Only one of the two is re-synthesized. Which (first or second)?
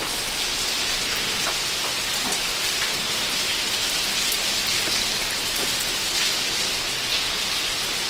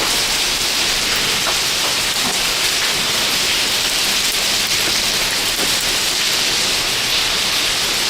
second